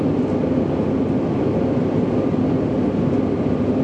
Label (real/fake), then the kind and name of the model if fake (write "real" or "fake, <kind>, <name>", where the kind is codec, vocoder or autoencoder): real